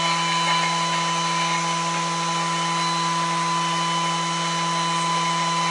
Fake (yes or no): no